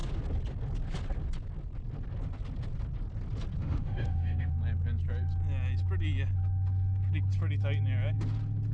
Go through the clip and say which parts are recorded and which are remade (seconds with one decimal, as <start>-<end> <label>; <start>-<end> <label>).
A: 0.0-3.6 recorded; 3.6-4.5 remade; 4.5-8.7 recorded